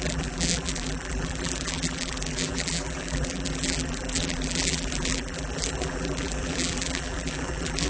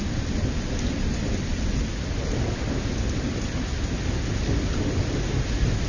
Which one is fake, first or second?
first